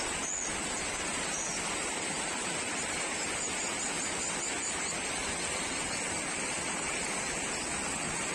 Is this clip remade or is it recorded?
recorded